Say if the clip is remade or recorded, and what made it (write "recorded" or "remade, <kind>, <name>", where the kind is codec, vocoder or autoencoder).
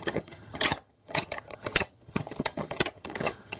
remade, vocoder, HiFi-GAN